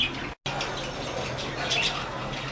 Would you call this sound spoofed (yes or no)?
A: no